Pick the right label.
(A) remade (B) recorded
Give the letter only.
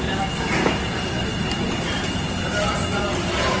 B